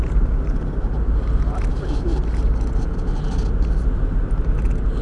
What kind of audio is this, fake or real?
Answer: real